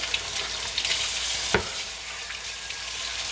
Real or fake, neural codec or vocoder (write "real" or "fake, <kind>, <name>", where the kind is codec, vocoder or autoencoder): real